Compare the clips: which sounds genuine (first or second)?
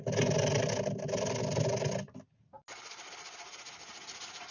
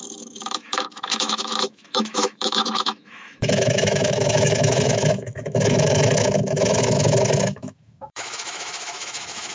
first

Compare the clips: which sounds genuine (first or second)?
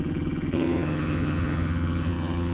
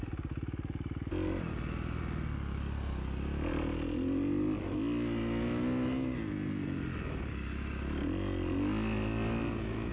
second